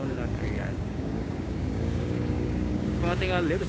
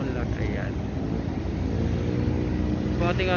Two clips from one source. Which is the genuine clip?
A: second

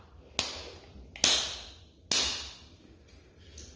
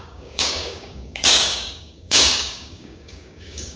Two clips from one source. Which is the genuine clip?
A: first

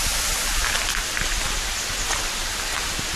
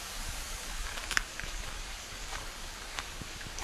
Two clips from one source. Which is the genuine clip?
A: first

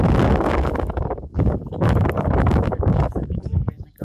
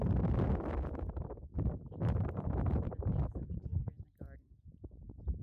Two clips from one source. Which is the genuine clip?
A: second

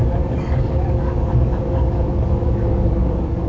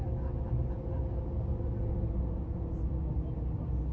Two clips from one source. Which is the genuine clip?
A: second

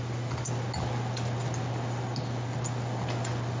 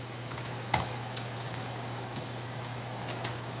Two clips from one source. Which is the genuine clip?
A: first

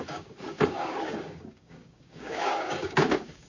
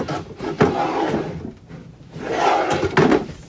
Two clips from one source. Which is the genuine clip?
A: second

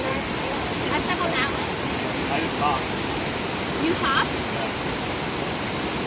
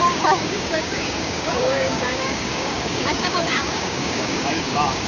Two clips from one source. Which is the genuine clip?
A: first